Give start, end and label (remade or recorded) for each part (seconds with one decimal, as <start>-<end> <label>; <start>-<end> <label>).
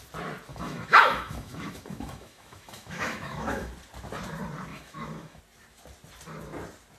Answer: 0.0-0.5 recorded; 0.5-3.7 remade; 3.7-4.7 recorded; 4.7-5.4 remade; 5.4-7.0 recorded